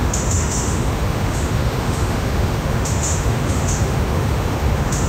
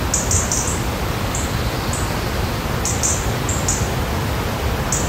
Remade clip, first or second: first